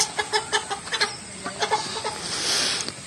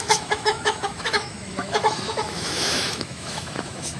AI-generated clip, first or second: second